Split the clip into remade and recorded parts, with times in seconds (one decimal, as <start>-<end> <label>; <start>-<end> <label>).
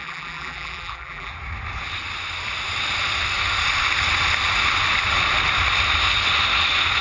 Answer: 0.0-1.3 remade; 1.3-7.0 recorded